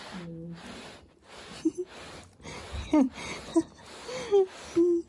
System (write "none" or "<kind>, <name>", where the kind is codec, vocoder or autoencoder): none